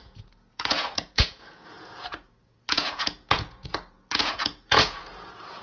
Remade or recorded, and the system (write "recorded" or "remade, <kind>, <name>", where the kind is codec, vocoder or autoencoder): remade, vocoder, Vocos